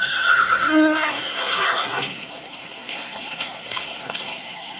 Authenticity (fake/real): fake